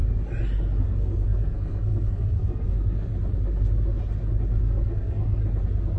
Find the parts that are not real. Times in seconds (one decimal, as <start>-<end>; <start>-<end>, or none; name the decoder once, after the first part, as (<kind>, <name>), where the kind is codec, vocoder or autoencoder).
0.8-3.1 (codec, SNAC); 4.6-5.4